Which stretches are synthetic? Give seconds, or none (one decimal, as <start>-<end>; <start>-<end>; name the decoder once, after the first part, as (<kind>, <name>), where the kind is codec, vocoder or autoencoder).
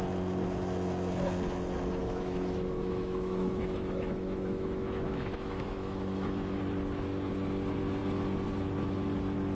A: 2.0-6.6 (autoencoder, DAC-VAE)